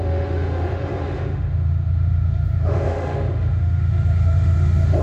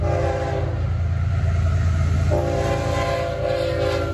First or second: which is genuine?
second